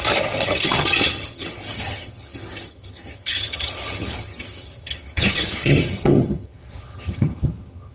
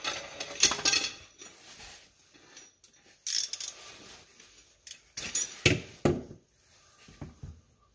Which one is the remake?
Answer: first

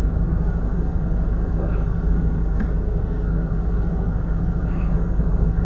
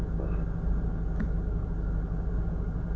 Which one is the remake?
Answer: first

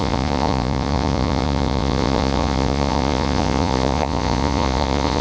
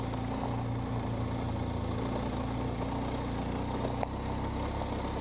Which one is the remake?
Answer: first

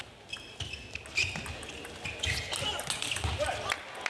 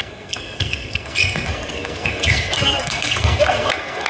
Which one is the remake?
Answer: second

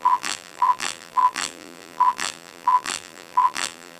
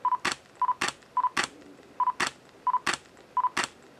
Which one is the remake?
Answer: first